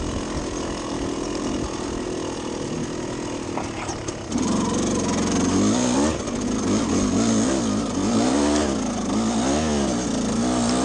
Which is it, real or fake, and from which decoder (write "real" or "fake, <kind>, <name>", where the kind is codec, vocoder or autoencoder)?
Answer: real